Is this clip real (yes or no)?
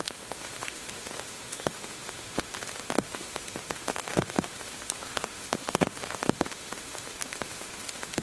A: no